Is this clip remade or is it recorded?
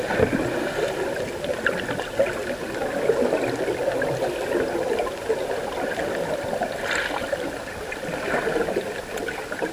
recorded